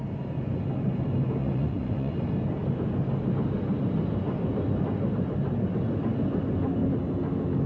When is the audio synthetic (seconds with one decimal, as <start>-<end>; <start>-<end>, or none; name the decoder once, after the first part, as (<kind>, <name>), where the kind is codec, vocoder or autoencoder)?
1.4-2.1 (vocoder, Vocos)